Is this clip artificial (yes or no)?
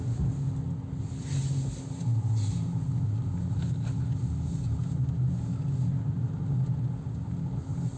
no